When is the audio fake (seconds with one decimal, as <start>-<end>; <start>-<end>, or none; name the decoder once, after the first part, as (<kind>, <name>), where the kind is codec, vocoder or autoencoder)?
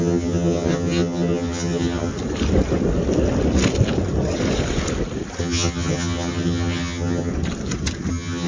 0.0-2.1 (vocoder, HiFi-GAN); 5.4-7.3; 8.1-8.5